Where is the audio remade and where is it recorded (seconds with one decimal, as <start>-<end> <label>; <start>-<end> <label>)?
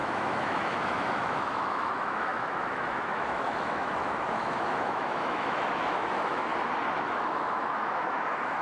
0.0-6.5 remade; 6.5-7.0 recorded; 7.0-8.6 remade